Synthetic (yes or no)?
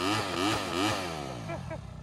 no